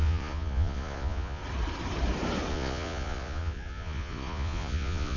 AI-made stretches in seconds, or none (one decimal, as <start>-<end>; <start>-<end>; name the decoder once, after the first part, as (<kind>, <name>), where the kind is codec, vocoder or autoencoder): 0.0-1.4 (vocoder, Vocos); 2.5-5.2